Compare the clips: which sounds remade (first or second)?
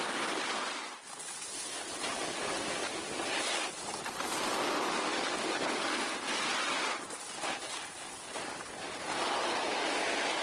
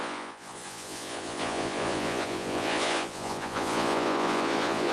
second